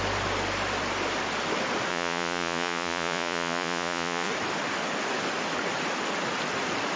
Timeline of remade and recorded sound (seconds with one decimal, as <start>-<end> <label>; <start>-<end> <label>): 0.0-1.9 recorded; 1.9-4.3 remade; 4.3-7.0 recorded